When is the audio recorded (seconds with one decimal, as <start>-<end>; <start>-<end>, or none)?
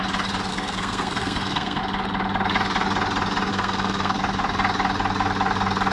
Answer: 0.0-0.5; 1.8-3.5; 4.2-5.9